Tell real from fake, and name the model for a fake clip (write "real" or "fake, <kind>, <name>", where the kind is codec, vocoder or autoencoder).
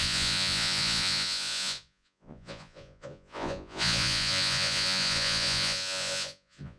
fake, vocoder, Vocos